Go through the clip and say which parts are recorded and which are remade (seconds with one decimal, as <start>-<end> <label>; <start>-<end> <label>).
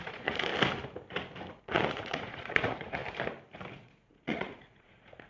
0.0-0.5 remade; 0.5-1.6 recorded; 1.6-3.0 remade; 3.0-3.7 recorded; 3.7-5.3 remade